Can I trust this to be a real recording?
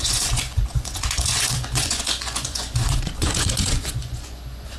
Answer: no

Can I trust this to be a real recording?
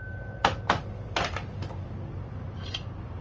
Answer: yes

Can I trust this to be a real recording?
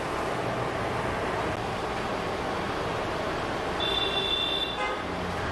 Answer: yes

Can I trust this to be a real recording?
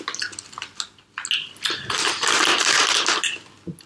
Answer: yes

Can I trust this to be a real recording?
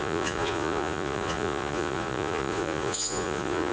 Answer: no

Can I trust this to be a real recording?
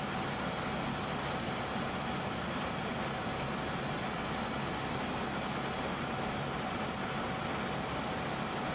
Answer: yes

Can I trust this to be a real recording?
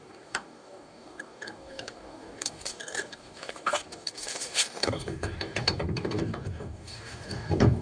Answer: no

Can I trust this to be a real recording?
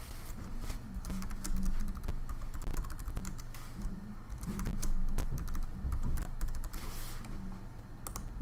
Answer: yes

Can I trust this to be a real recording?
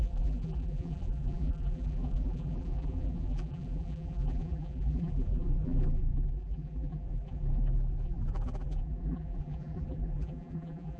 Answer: no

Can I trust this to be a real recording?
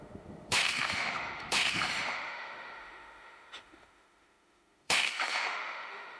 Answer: no